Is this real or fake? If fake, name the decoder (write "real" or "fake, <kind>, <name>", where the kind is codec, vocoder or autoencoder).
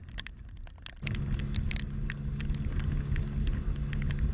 real